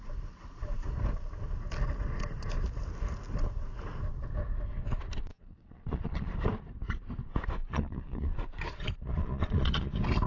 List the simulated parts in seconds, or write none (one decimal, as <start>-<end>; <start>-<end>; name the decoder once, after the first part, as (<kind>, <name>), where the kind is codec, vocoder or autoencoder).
5.3-6.3 (vocoder, Vocos); 7.7-9.9